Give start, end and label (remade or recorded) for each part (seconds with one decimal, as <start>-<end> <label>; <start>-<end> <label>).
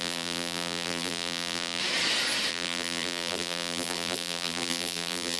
0.0-1.8 remade; 1.8-2.5 recorded; 2.5-5.4 remade